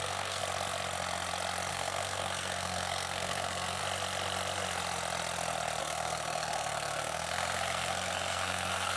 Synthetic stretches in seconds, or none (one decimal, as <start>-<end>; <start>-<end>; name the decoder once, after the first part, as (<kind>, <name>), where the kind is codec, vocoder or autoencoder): 0.0-0.4 (codec, SNAC); 1.7-3.8; 5.8-9.0